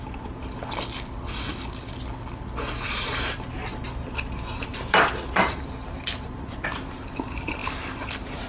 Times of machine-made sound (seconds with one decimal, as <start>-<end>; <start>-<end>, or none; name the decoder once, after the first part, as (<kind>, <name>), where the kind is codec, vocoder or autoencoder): 0.0-0.4 (vocoder, BigVGAN v2); 2.9-8.5